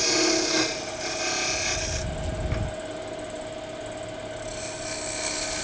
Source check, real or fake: real